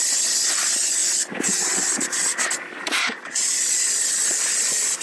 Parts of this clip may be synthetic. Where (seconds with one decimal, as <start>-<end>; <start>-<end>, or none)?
3.0-3.8